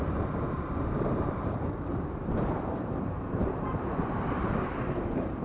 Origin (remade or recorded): remade